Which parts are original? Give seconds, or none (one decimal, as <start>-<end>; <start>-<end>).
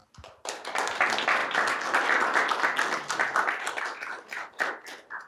0.0-5.3